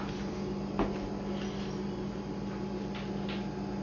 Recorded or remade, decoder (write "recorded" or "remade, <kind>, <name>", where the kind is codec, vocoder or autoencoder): recorded